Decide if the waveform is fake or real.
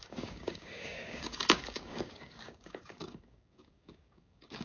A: fake